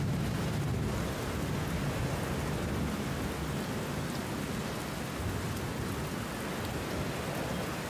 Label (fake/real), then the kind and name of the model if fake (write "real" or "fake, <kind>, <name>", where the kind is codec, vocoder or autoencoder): real